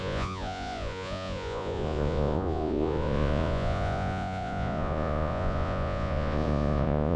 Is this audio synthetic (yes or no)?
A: yes